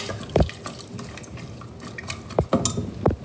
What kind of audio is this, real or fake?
real